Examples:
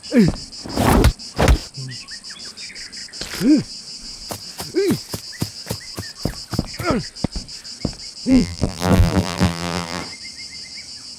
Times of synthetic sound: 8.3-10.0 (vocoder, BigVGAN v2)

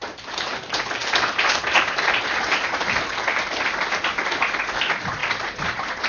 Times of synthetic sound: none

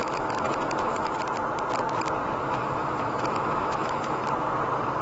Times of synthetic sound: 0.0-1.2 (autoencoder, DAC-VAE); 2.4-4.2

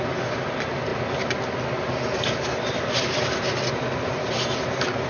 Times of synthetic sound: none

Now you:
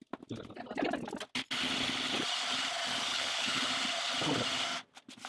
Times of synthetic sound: 3.1-3.7 (codec, HILCodec)

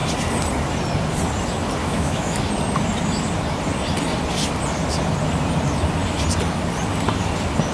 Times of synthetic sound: 1.8-2.4 (autoencoder, DAC-VAE)